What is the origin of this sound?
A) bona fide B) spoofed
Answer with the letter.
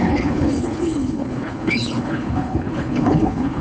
B